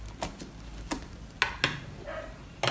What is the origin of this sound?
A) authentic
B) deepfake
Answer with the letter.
A